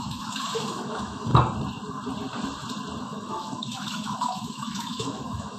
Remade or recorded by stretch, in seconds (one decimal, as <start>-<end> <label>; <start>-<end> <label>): 0.0-1.3 remade; 1.3-3.0 recorded; 3.0-5.6 remade